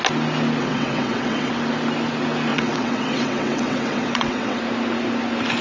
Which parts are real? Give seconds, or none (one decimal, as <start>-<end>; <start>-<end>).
0.0-0.6; 1.5-2.5; 4.6-5.6